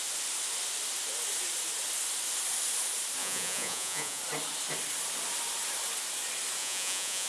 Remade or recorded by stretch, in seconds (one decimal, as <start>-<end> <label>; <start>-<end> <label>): 0.0-3.2 recorded; 3.2-4.2 remade; 4.2-6.6 recorded; 6.6-7.3 remade